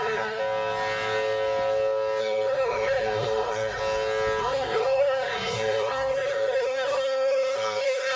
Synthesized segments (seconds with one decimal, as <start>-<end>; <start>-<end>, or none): 0.0-0.4; 2.2-3.8; 4.4-8.2